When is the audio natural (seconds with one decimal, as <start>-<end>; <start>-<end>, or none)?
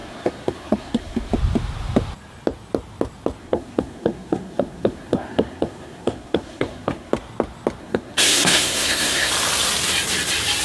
1.3-3.4; 7.1-7.8; 9.3-10.6